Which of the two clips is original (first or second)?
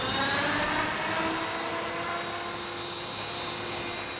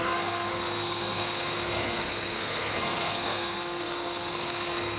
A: first